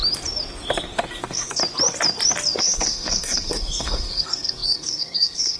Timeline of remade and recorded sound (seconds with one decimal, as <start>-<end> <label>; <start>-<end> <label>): 0.0-1.2 recorded; 1.2-1.6 remade; 1.6-2.6 recorded; 2.6-5.6 remade